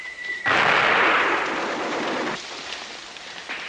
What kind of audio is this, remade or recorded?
recorded